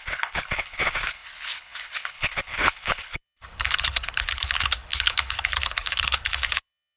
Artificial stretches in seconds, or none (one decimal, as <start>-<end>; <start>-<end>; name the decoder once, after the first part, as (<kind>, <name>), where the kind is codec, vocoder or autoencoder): 0.0-7.0 (codec, HILCodec)